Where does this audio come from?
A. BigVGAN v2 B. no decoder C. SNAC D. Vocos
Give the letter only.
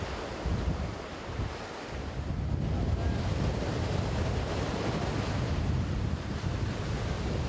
B